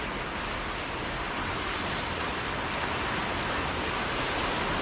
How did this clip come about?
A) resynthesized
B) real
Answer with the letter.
B